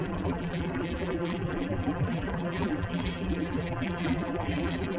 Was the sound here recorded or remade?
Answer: remade